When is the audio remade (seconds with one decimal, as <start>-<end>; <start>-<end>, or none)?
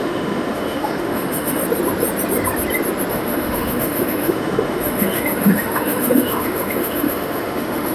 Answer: 0.0-1.6; 3.1-7.9